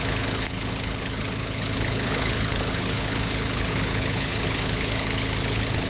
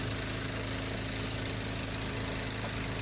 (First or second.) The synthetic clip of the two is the first